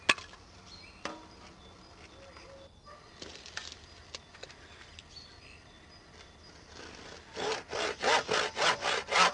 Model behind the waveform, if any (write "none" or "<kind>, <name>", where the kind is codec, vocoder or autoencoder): none